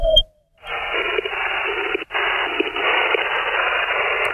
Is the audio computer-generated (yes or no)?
no